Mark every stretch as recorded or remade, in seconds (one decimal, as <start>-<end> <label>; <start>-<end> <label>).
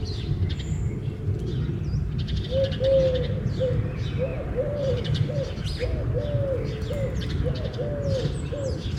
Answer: 0.0-4.3 recorded; 4.3-5.3 remade; 5.3-9.0 recorded